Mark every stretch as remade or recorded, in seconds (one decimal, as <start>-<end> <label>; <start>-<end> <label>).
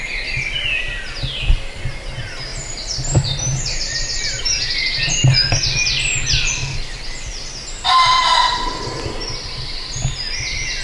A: 0.0-2.5 recorded; 2.5-4.4 remade; 4.4-7.3 recorded; 7.3-8.1 remade; 8.1-10.8 recorded